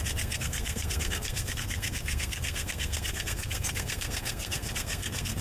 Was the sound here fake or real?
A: fake